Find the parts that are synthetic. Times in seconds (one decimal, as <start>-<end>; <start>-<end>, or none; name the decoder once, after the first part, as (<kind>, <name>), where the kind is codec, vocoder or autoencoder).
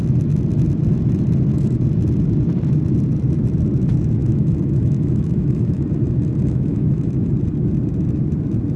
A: 4.2-5.8 (autoencoder, DAC-VAE); 6.4-7.3